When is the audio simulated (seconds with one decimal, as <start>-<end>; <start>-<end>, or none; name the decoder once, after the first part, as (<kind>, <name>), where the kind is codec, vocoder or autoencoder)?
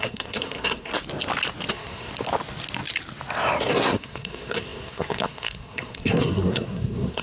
0.0-0.9 (codec, SNAC); 1.7-2.1; 3.7-7.2